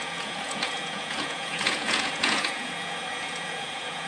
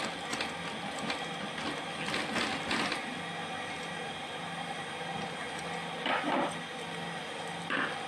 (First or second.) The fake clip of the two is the first